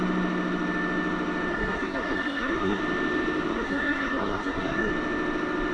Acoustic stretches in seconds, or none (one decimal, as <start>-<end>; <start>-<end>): 0.0-1.5; 2.8-3.5; 4.9-5.7